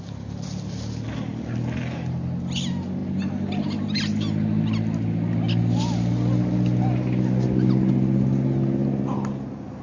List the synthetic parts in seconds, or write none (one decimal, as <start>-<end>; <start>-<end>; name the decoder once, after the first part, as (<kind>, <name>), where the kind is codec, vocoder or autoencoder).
none